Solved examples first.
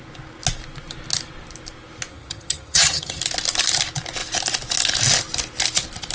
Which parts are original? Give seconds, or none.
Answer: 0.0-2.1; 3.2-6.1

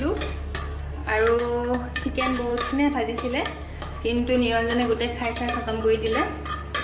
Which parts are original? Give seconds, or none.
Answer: 0.0-1.0; 2.1-2.5; 5.8-6.8

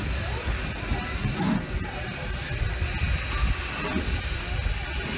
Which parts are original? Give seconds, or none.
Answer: 0.0-1.0; 3.0-5.2

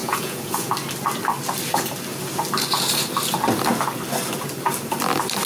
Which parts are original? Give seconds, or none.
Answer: 0.7-5.5